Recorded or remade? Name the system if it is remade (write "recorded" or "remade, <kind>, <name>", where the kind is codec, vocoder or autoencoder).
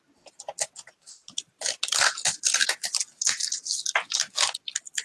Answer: recorded